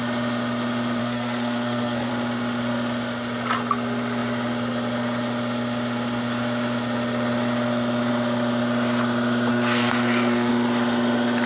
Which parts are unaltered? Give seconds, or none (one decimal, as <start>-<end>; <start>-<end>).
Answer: 0.0-1.0; 2.1-9.5; 10.5-11.5